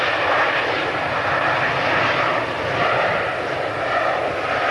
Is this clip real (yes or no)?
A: yes